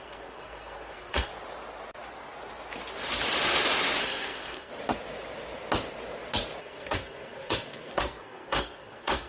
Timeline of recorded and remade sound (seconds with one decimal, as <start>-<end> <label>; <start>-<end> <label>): 0.0-1.3 remade; 1.3-4.0 recorded; 4.0-4.7 remade; 4.7-6.6 recorded; 6.6-9.3 remade